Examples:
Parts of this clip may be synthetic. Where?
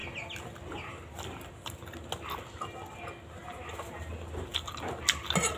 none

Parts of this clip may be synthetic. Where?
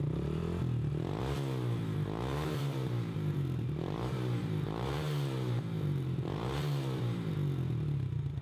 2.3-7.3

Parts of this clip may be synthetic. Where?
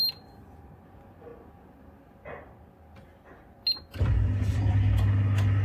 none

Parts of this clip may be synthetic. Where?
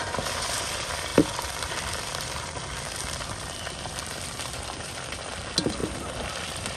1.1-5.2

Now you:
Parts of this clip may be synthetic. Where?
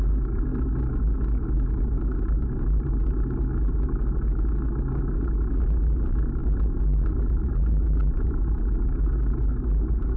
none